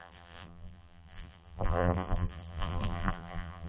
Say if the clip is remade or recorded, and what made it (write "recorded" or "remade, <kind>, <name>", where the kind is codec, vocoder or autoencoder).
remade, vocoder, BigVGAN v2